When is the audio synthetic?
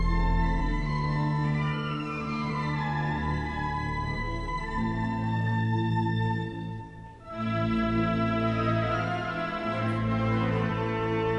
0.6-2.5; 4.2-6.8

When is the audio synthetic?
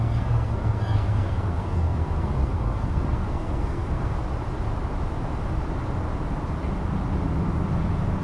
0.0-4.2